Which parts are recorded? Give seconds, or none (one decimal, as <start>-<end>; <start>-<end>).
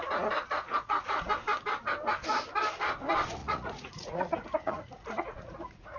0.0-0.7; 1.3-3.4